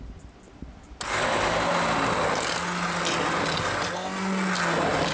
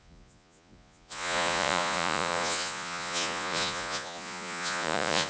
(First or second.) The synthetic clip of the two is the second